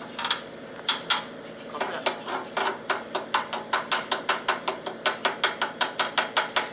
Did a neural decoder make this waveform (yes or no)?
no